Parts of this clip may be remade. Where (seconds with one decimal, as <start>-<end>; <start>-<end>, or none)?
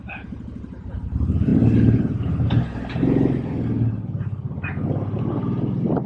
none